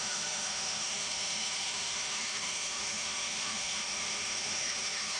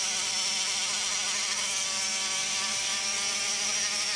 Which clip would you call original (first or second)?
second